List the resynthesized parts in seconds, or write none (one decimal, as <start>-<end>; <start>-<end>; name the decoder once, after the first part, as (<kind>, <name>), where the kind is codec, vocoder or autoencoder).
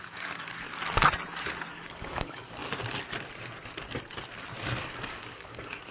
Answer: 0.0-0.7 (codec, DAC); 1.7-2.6; 4.8-5.9